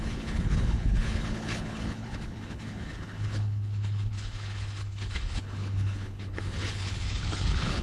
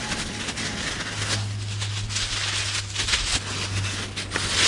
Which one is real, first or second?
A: second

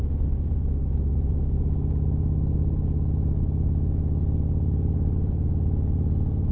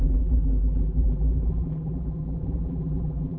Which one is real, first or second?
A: first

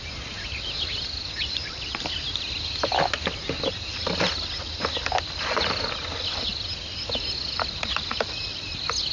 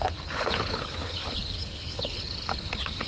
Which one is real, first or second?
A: first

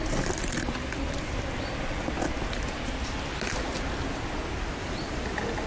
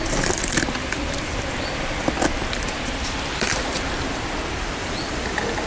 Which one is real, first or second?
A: first